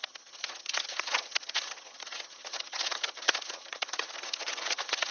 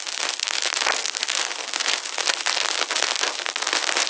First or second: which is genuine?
second